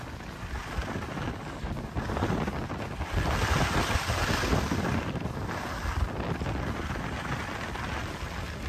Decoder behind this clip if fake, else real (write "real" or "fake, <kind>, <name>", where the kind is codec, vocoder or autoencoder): real